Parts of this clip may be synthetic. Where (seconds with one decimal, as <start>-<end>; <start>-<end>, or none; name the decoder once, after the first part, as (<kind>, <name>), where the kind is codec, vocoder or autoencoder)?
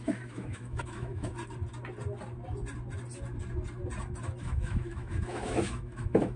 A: 0.0-1.3 (autoencoder, DAC-VAE); 4.4-6.4